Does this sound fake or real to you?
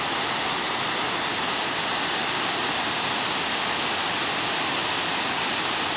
real